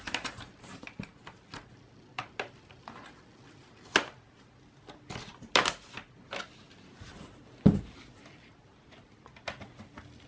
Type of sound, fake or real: real